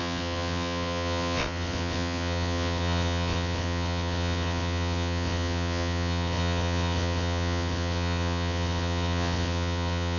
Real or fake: fake